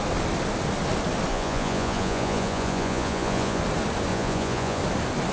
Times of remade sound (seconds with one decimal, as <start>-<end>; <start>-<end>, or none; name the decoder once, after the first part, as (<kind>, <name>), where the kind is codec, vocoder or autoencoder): 1.3-3.6 (vocoder, Vocos); 4.1-4.8